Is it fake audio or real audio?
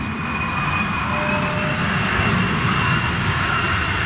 real